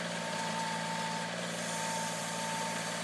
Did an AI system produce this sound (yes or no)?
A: yes